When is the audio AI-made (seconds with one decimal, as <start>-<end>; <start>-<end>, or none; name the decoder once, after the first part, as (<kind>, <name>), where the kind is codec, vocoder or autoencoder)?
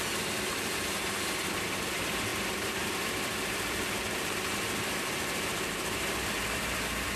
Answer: 0.0-7.2 (vocoder, BigVGAN v2)